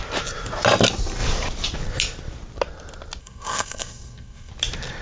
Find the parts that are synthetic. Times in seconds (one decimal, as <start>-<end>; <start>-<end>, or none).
3.2-4.5